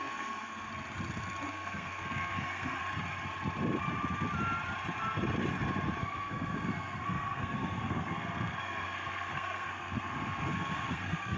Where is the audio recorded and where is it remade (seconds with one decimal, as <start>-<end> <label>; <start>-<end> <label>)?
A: 0.0-0.7 remade; 0.7-1.5 recorded; 1.5-2.8 remade; 2.8-6.0 recorded; 6.0-11.4 remade